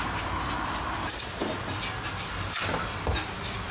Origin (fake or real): real